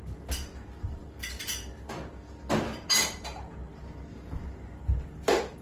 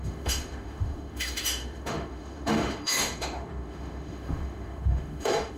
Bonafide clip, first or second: first